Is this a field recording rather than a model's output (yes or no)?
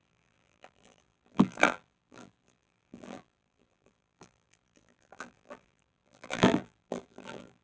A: no